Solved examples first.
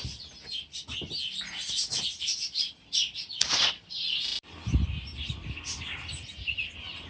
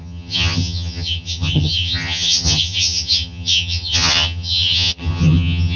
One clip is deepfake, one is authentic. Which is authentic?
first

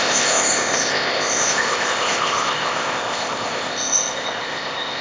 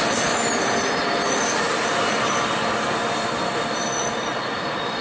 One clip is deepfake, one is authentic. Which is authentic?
second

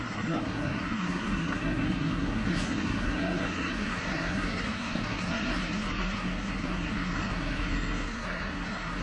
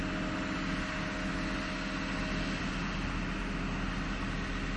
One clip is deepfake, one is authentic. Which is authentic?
second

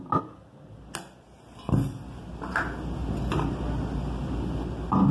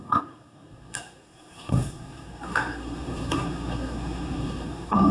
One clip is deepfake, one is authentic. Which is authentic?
first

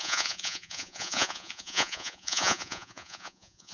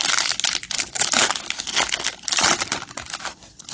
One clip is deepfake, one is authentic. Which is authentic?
second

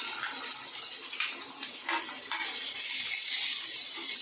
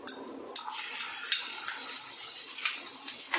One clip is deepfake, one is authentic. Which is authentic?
first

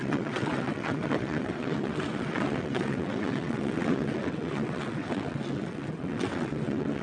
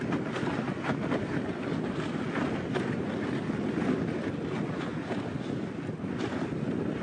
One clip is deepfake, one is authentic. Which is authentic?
second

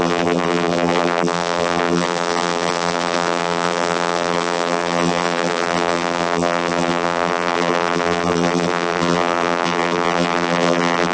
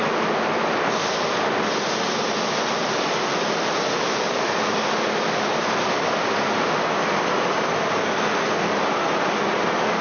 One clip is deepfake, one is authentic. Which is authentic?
second